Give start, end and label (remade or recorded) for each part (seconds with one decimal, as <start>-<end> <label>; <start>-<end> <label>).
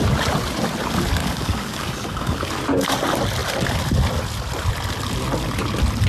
0.0-1.2 recorded; 1.2-2.5 remade; 2.5-6.1 recorded